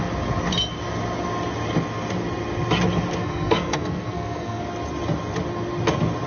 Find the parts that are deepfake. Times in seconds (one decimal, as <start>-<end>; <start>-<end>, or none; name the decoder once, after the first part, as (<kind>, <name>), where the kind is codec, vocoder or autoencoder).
3.2-4.6 (codec, SNAC)